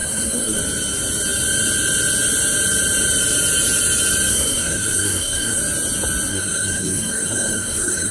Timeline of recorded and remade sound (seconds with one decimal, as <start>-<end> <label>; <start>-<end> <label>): 0.0-0.6 remade; 0.6-4.3 recorded; 4.3-5.6 remade; 5.6-6.3 recorded; 6.3-8.1 remade